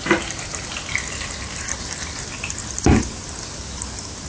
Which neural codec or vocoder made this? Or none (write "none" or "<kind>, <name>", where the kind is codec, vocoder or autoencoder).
none